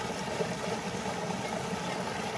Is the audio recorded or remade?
recorded